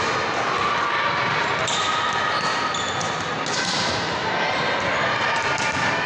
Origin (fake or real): real